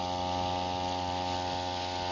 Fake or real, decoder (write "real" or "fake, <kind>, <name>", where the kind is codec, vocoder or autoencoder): real